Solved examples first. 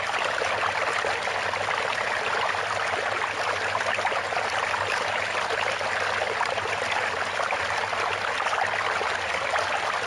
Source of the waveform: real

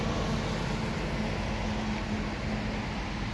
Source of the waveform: real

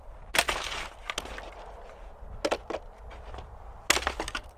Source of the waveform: real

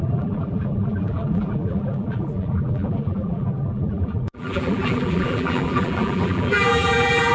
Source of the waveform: fake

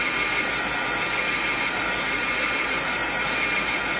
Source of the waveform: real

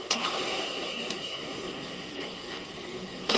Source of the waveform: fake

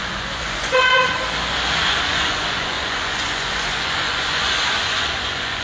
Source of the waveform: fake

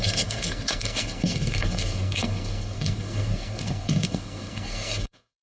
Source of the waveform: fake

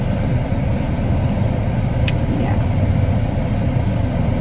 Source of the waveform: real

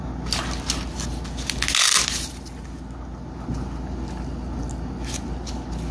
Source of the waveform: real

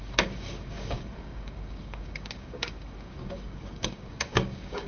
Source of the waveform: fake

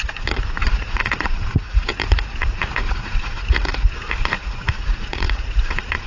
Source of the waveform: fake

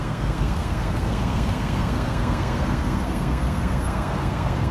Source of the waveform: fake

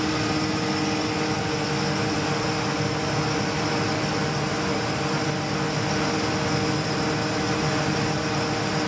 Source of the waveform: real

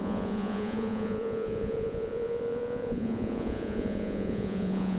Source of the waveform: fake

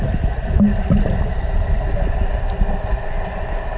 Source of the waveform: real